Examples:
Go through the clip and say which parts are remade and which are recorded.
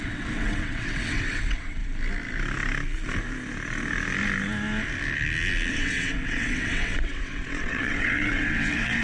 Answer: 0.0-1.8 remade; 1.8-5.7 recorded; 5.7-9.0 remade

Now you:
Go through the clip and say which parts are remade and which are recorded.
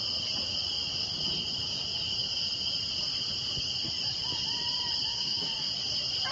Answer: 0.0-5.1 recorded; 5.1-5.7 remade; 5.7-6.3 recorded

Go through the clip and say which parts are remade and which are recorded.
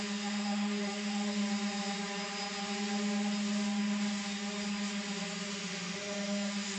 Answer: 0.0-1.4 remade; 1.4-5.5 recorded; 5.5-6.8 remade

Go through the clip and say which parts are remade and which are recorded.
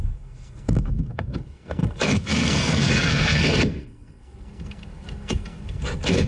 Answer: 0.0-6.3 remade